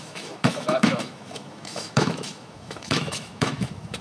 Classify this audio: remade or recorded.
remade